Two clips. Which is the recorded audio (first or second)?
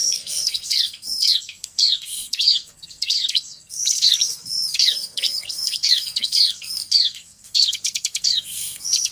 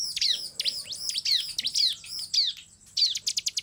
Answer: second